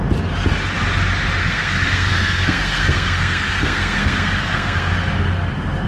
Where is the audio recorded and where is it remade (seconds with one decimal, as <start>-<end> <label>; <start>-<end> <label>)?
0.0-1.4 recorded; 1.4-4.9 remade; 4.9-5.9 recorded